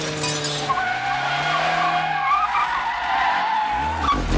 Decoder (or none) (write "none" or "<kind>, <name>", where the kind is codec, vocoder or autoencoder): none